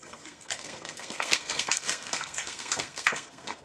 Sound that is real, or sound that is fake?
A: fake